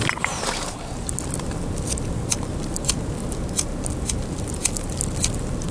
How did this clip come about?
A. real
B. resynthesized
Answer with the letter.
A